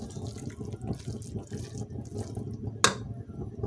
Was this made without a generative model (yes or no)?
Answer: yes